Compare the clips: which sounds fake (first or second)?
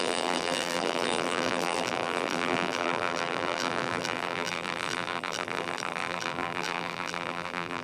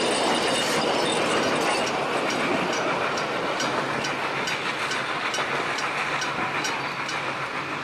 first